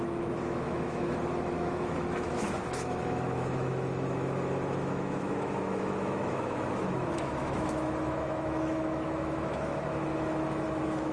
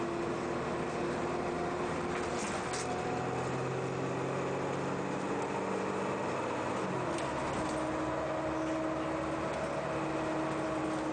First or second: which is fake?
first